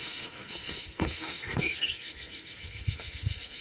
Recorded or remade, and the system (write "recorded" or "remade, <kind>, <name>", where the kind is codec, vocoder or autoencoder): remade, codec, SNAC